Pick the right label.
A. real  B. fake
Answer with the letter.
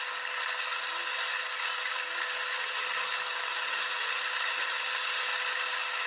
A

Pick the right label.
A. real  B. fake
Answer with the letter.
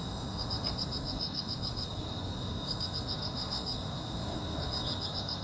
B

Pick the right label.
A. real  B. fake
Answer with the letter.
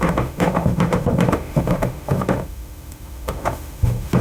B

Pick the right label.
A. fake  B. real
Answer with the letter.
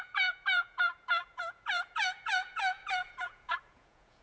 A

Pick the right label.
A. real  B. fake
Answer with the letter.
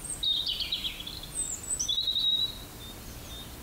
A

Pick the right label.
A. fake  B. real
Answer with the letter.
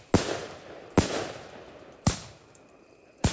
B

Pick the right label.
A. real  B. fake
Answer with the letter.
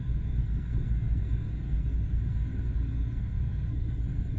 B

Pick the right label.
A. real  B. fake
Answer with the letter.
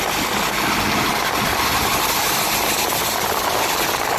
A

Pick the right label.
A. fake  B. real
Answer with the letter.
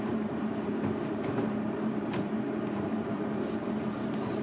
A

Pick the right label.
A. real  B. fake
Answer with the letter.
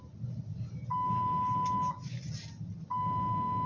A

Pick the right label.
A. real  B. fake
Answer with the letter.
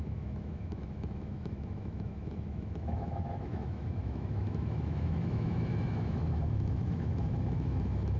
B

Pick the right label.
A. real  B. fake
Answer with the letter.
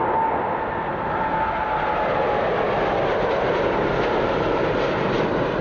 A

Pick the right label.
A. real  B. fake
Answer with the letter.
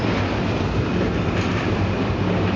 B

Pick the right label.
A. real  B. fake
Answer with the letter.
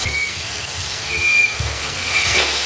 B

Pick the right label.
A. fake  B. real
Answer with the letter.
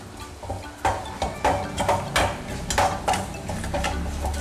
B